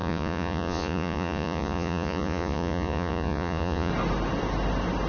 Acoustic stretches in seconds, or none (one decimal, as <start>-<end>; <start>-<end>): 3.9-5.1

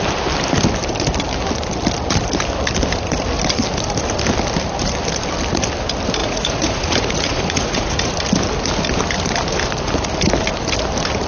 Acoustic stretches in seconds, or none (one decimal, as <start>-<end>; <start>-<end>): 0.0-6.2; 8.1-11.3

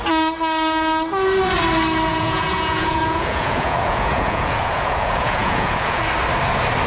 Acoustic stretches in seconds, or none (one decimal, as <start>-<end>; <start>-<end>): 0.0-2.1; 6.0-6.9

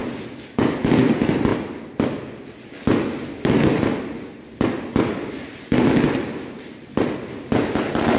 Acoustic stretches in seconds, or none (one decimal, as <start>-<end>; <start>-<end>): 0.0-8.2

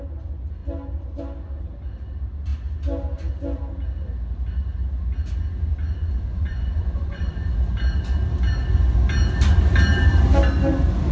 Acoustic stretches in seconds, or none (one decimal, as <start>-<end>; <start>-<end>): 0.0-6.0; 7.3-11.1

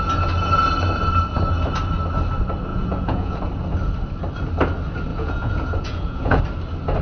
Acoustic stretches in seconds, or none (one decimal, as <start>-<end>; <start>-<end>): 0.0-2.7; 3.4-5.1; 6.4-7.0

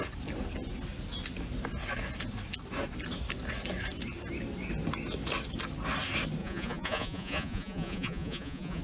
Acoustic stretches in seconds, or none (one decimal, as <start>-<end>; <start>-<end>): 0.0-6.4

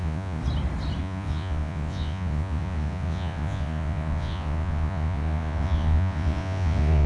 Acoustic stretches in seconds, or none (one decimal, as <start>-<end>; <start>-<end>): 0.4-1.0